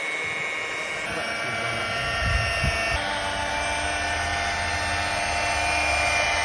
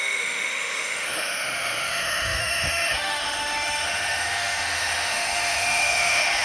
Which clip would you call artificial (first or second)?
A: second